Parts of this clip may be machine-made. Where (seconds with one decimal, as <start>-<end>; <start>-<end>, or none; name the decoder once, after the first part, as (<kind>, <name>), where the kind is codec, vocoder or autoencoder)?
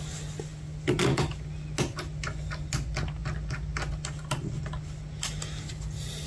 none